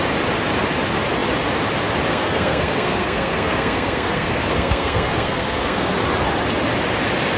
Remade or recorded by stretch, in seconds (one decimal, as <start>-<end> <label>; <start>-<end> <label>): 0.0-2.1 recorded; 2.1-5.9 remade; 5.9-7.4 recorded